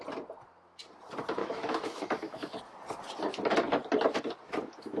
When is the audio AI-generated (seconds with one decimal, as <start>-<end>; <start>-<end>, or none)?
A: 1.4-2.6

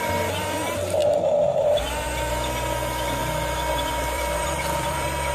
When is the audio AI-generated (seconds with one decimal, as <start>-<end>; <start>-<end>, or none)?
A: 3.2-5.3